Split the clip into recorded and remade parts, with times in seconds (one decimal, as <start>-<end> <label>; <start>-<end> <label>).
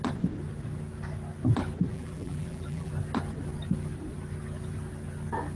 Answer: 0.0-1.9 recorded; 1.9-2.9 remade; 2.9-5.6 recorded